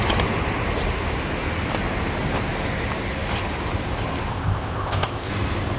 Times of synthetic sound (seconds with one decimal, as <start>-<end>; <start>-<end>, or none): 4.3-5.3